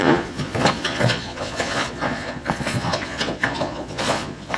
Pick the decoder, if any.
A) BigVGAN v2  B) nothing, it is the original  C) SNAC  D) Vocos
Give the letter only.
D